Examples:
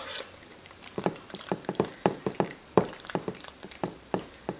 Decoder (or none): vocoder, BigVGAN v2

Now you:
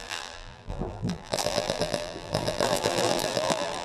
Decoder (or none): vocoder, BigVGAN v2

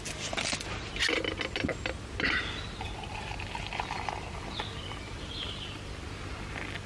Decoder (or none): none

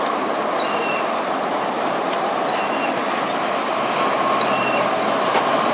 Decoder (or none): vocoder, BigVGAN v2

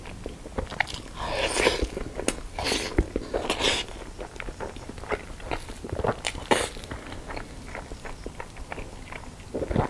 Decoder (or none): none